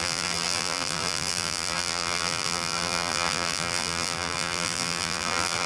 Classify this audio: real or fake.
fake